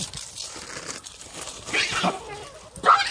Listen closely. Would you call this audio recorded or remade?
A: recorded